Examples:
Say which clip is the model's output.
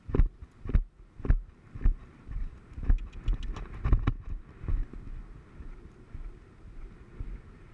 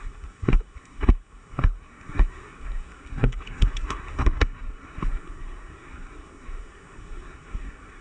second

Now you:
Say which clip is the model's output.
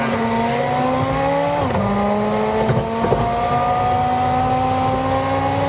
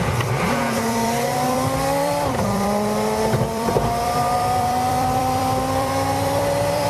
second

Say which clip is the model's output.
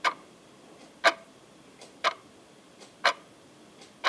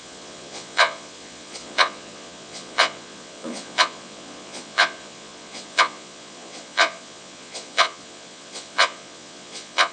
second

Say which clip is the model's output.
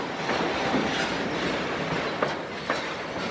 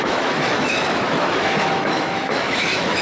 second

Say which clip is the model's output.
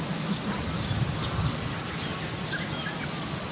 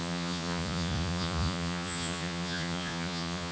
second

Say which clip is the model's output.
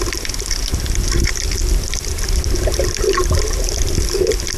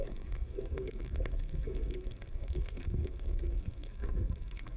second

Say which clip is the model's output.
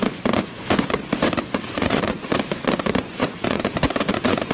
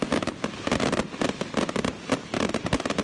first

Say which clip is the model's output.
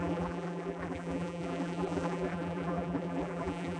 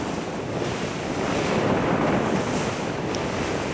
first